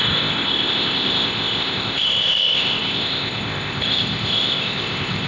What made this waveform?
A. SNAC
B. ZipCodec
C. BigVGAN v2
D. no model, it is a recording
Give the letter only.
B